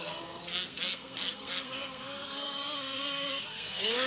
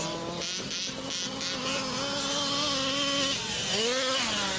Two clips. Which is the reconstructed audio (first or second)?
first